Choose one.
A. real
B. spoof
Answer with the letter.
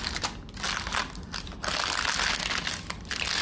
A